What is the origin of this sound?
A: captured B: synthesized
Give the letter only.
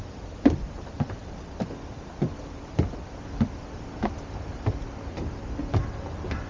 A